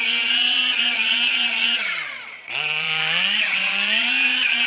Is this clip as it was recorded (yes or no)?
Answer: no